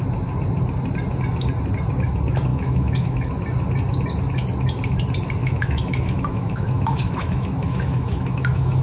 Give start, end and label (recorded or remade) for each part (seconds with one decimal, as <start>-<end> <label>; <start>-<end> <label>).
0.0-2.5 recorded; 2.5-3.3 remade; 3.3-5.4 recorded; 5.4-8.8 remade